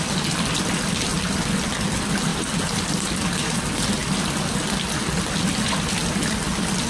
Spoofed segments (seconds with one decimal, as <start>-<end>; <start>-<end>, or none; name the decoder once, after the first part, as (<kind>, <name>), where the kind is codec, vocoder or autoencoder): 1.1-1.8 (vocoder, BigVGAN v2); 2.3-3.6